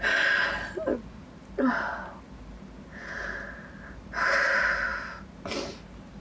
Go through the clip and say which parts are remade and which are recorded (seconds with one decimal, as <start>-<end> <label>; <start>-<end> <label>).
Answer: 0.0-6.2 recorded